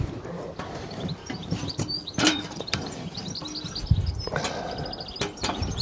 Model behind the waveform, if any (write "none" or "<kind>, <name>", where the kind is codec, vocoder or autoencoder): vocoder, BigVGAN v2